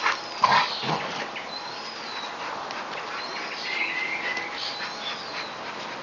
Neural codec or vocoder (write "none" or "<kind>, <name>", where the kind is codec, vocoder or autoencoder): none